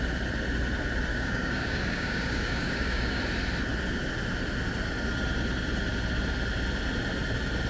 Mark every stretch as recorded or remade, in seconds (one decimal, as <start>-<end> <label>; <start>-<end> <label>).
0.0-1.1 recorded; 1.1-3.2 remade; 3.2-7.7 recorded